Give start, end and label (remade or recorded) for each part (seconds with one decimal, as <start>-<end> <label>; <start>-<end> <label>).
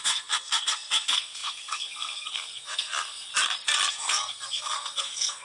0.0-3.3 remade; 3.3-3.9 recorded; 3.9-5.4 remade